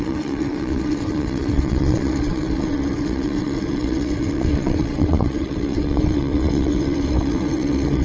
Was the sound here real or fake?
fake